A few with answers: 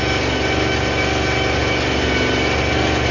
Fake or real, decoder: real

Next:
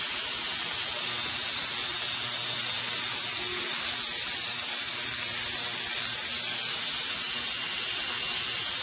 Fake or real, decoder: real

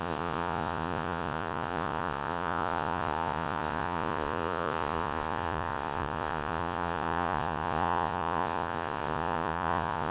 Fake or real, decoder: fake, vocoder, Vocos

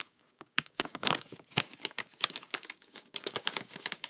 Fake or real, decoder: fake, codec, DAC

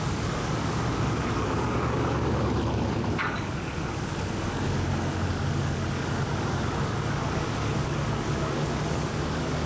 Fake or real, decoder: fake, codec, DAC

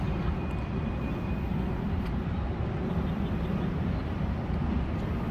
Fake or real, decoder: real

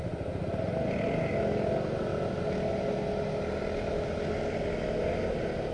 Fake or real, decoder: real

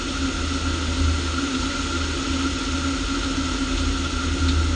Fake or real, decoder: real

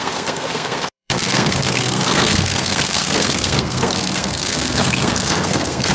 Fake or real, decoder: fake, codec, SNAC